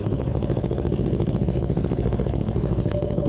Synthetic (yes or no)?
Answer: yes